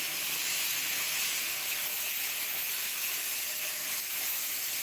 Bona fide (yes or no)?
no